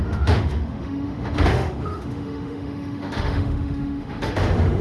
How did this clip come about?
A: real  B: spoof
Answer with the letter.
B